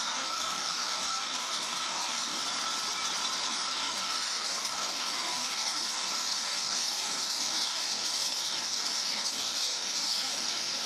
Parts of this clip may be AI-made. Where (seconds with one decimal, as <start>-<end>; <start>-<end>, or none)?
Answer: 0.0-2.4; 3.4-10.9